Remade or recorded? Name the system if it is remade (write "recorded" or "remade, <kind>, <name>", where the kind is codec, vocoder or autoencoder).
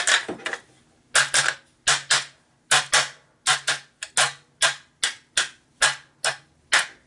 recorded